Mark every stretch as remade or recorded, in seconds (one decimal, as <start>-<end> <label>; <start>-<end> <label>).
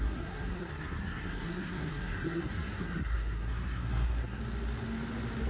0.0-4.4 remade; 4.4-5.5 recorded